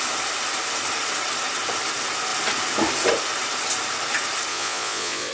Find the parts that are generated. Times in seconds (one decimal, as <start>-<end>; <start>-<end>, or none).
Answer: 4.5-5.3